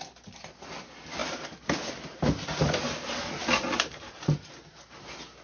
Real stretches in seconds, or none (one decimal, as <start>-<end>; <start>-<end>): 0.0-5.4